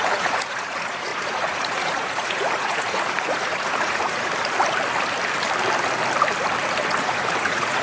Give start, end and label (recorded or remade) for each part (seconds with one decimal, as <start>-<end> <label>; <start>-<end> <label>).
0.0-4.3 remade; 4.3-7.0 recorded; 7.0-7.8 remade